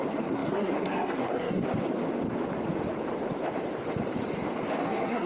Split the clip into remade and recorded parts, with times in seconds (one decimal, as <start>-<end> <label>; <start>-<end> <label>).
0.0-1.6 remade; 1.6-4.8 recorded; 4.8-5.3 remade